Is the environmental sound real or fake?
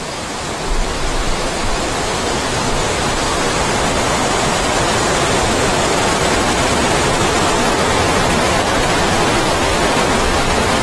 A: fake